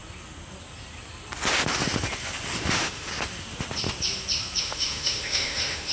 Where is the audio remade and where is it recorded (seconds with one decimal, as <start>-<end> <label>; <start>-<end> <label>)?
0.0-2.7 recorded; 2.7-3.1 remade; 3.1-4.6 recorded; 4.6-5.9 remade